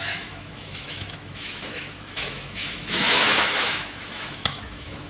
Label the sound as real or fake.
fake